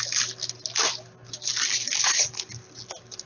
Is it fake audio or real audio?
real